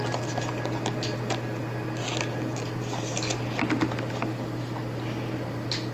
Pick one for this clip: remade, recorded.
recorded